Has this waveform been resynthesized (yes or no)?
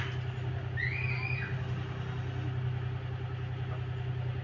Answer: no